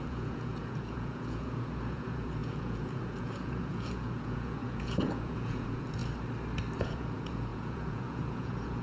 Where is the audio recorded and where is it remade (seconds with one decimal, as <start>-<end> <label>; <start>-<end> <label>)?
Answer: 0.0-6.0 remade; 6.0-6.8 recorded; 6.8-8.8 remade